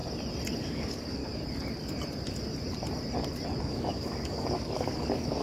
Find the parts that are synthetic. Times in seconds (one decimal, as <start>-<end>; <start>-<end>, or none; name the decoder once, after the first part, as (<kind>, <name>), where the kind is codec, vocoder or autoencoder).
0.6-1.2 (codec, DAC); 3.6-5.4